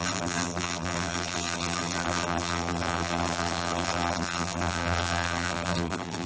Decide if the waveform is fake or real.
fake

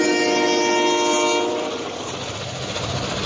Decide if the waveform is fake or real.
real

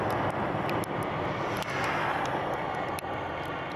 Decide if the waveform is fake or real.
real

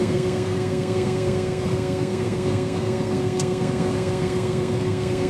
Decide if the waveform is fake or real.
fake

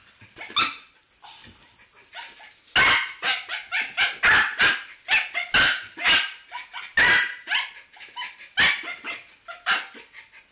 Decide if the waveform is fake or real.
real